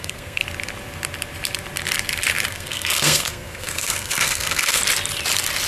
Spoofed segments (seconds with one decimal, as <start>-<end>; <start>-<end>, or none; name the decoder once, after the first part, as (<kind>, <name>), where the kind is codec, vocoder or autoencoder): 0.0-0.4 (codec, SNAC); 2.5-4.8